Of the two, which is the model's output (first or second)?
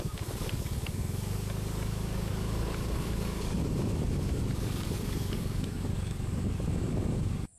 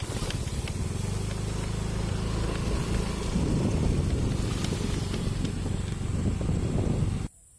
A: first